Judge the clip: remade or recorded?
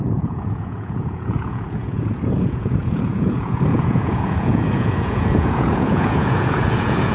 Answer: remade